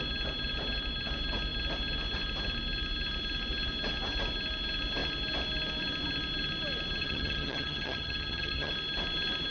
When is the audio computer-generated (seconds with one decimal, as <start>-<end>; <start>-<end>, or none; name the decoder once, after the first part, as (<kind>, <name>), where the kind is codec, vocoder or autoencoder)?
7.0-8.7 (vocoder, HiFi-GAN)